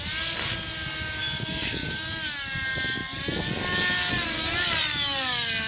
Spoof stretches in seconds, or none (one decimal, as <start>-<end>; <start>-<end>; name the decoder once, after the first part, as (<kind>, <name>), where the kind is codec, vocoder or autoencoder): 1.2-2.1 (codec, DAC)